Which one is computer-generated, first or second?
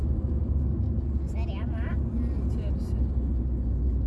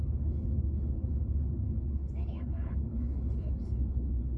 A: second